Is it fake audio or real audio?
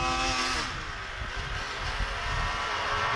real